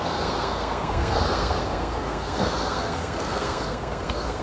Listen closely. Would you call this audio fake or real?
fake